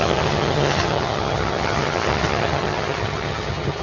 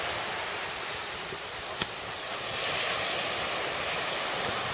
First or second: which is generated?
first